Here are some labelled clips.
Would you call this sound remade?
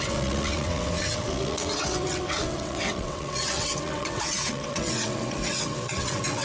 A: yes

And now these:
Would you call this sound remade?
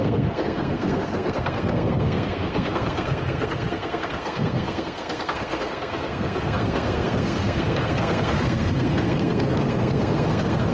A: yes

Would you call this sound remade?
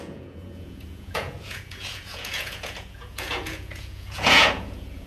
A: yes